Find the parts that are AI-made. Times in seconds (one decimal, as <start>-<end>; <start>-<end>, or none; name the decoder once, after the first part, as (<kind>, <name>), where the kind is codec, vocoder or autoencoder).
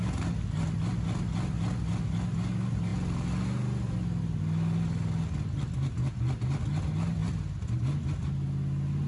none